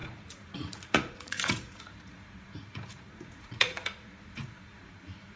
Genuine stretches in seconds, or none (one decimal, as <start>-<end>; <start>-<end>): none